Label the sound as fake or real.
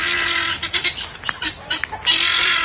real